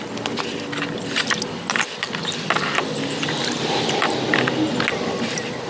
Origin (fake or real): real